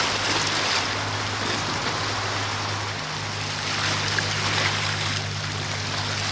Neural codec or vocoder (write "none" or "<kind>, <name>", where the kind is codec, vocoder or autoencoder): none